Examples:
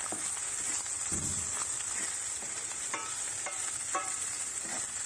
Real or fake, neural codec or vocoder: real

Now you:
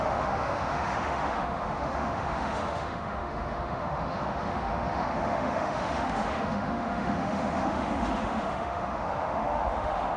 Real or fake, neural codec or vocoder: fake, autoencoder, DAC-VAE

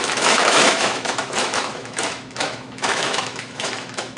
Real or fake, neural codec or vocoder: fake, autoencoder, DAC-VAE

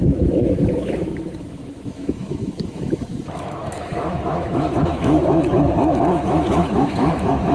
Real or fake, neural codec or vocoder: fake, autoencoder, DAC-VAE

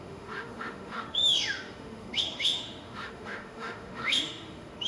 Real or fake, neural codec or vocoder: fake, autoencoder, DAC-VAE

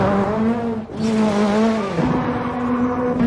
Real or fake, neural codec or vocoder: real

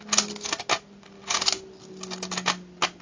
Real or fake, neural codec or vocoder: real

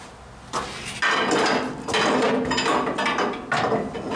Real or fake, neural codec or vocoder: real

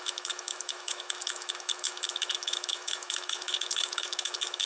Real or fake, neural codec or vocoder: fake, autoencoder, DAC-VAE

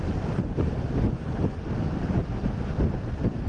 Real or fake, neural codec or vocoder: real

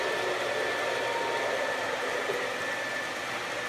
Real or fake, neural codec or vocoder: real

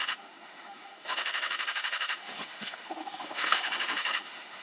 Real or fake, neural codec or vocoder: fake, autoencoder, DAC-VAE